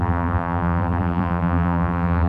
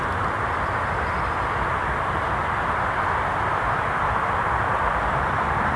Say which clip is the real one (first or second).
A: second